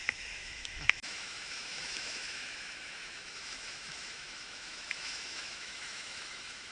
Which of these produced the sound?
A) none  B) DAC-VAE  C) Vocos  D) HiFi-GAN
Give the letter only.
B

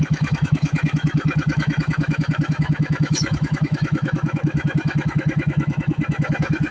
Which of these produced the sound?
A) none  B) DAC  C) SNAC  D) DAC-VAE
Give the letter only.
D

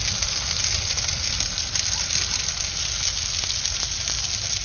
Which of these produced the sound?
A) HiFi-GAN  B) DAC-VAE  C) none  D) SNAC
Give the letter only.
C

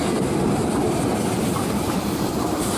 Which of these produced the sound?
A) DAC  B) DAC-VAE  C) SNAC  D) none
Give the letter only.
D